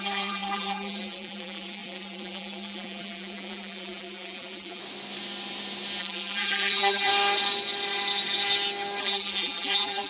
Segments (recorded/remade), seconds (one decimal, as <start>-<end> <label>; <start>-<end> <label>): 0.0-4.8 remade; 4.8-6.0 recorded; 6.0-7.1 remade; 7.1-9.0 recorded; 9.0-10.1 remade